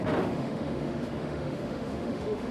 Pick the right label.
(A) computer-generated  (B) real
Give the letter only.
A